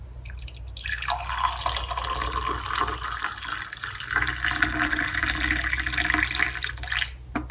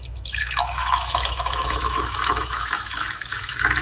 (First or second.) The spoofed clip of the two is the second